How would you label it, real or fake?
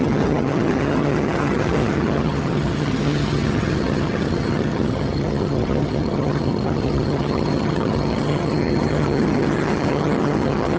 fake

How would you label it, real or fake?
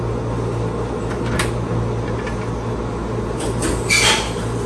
real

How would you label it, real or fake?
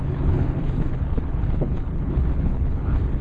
fake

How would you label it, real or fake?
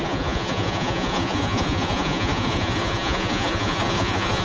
fake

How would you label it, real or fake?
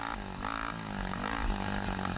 real